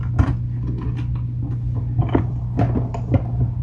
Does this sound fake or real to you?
real